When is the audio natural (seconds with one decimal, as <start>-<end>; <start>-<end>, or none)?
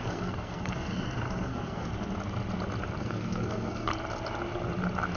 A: 1.9-3.0; 3.9-5.2